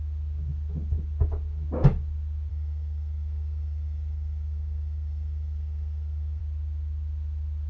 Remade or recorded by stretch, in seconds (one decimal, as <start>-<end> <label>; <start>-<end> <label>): 0.0-2.5 recorded; 2.5-6.4 remade; 6.4-7.7 recorded